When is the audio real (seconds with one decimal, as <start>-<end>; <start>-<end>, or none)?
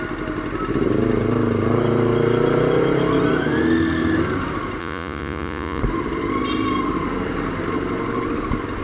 0.0-4.8; 5.8-8.8